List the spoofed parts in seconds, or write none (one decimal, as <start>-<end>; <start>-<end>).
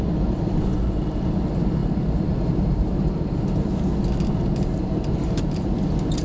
1.8-3.4; 4.7-5.6